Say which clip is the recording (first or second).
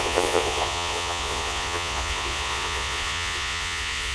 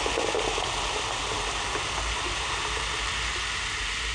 second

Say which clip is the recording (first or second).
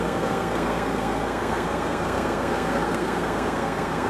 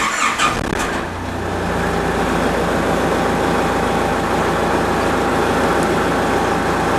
second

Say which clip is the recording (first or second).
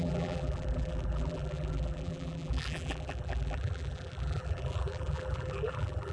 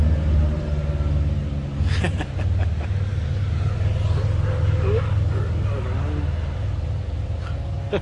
second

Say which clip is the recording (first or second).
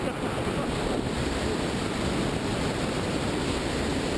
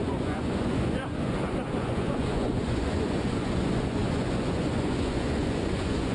first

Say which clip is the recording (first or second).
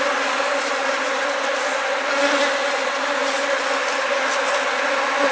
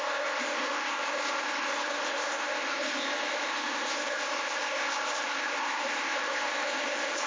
first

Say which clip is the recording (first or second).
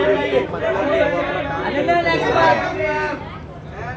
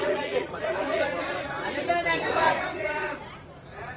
first